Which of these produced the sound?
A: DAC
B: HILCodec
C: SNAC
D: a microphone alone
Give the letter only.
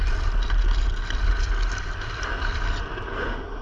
D